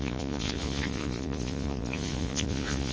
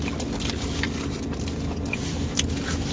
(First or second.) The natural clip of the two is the second